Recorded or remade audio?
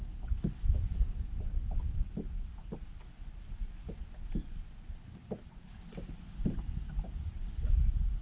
recorded